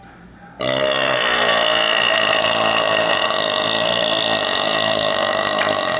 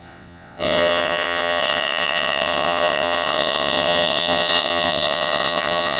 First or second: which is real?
first